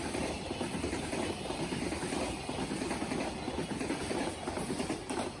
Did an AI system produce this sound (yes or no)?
no